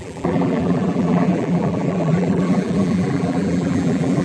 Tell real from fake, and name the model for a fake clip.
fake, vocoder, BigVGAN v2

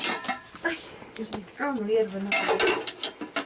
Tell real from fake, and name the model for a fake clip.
real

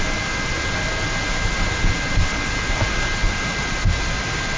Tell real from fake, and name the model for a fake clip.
real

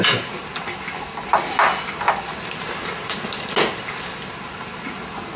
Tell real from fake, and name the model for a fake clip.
real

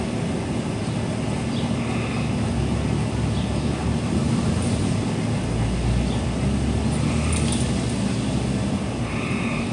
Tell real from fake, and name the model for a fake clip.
real